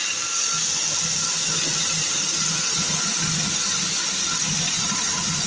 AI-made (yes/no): no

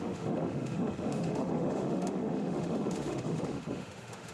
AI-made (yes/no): yes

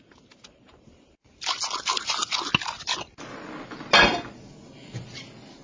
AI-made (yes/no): no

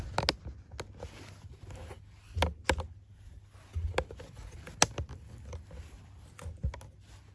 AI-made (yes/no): no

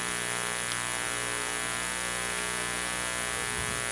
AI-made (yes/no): no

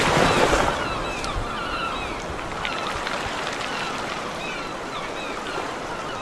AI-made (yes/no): no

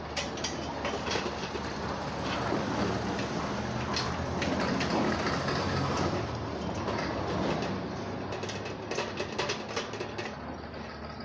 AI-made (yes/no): no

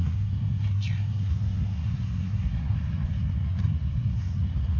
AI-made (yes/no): yes